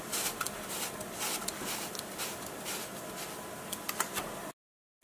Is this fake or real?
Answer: real